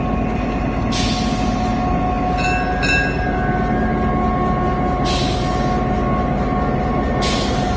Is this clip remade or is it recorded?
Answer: recorded